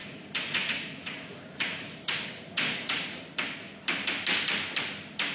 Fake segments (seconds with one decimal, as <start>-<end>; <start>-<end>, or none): 0.0-3.2